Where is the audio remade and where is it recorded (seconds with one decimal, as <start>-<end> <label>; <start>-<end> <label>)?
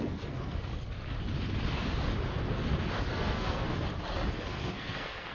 0.0-0.7 remade; 0.7-3.1 recorded; 3.1-3.7 remade; 3.7-4.4 recorded; 4.4-5.3 remade